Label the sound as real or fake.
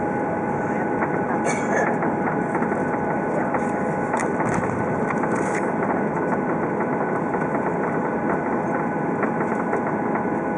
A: real